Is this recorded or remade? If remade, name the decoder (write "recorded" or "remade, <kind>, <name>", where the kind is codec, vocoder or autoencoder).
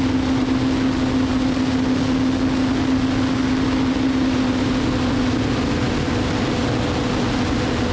recorded